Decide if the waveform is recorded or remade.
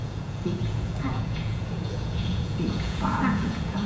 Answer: remade